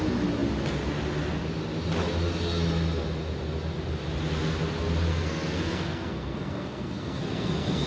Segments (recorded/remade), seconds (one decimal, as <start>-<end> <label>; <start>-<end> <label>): 0.0-5.1 recorded; 5.1-7.9 remade